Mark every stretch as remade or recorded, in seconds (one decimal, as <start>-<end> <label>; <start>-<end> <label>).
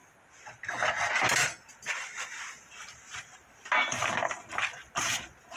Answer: 0.0-5.6 recorded